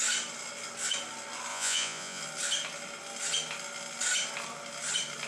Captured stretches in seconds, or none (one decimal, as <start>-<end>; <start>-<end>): 0.0-1.5; 2.2-5.3